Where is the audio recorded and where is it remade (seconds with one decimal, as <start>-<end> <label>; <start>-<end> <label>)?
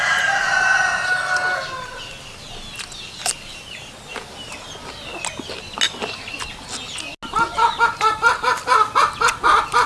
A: 0.0-3.5 recorded; 3.5-4.6 remade; 4.6-9.9 recorded